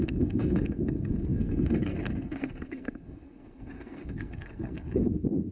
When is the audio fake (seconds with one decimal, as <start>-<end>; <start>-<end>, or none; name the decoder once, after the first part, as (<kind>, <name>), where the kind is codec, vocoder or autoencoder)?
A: 0.0-5.5 (codec, SNAC)